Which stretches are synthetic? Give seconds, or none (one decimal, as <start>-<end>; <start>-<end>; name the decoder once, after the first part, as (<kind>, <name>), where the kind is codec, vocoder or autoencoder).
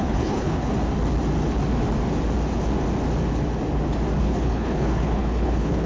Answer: 0.0-0.7 (codec, HILCodec); 4.2-5.9